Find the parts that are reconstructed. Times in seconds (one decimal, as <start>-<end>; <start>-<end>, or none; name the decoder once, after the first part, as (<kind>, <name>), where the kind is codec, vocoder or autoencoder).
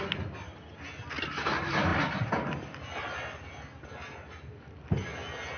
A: none